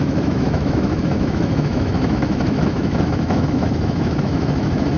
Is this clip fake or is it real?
fake